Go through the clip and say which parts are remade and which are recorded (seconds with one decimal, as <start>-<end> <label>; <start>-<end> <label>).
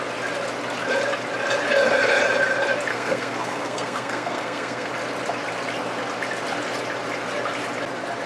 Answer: 0.0-2.9 recorded; 2.9-4.9 remade; 4.9-8.3 recorded